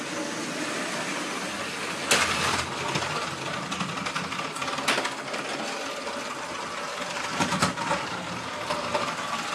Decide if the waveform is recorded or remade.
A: recorded